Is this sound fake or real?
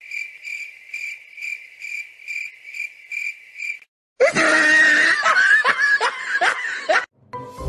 real